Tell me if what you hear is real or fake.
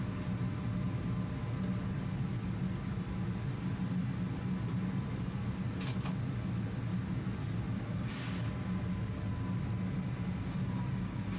real